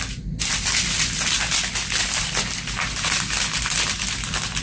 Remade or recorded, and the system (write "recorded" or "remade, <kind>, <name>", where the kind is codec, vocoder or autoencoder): recorded